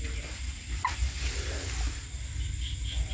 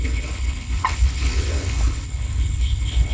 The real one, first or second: first